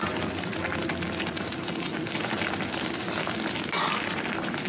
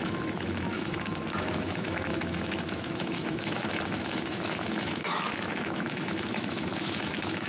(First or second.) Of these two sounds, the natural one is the first